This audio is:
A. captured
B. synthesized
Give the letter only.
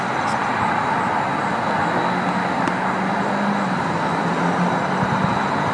A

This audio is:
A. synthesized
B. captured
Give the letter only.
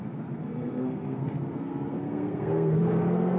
A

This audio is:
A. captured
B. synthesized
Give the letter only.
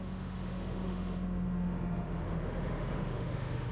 B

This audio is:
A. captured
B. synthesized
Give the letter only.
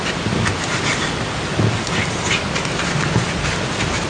A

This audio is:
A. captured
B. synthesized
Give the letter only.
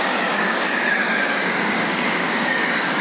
B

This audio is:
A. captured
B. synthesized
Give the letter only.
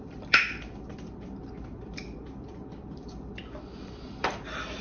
B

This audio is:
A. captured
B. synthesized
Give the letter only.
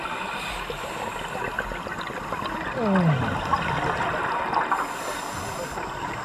A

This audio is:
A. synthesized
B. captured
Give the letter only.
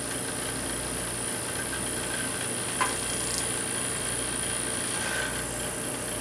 B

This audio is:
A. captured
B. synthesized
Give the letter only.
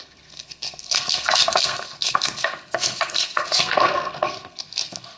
B